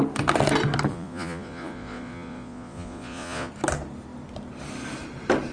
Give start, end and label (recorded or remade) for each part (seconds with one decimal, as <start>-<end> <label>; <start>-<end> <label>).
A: 0.0-0.9 recorded; 0.9-3.5 remade; 3.5-5.5 recorded